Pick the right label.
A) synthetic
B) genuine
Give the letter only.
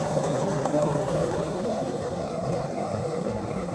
A